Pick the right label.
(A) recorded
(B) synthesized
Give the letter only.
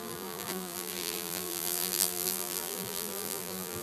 B